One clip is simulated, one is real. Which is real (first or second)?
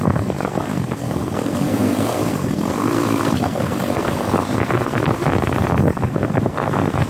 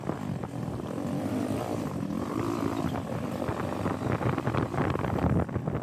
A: second